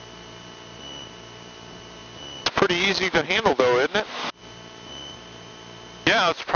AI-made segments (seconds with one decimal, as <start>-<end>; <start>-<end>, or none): none